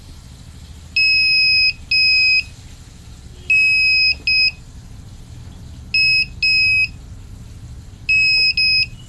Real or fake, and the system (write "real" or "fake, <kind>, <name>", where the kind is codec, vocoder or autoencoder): real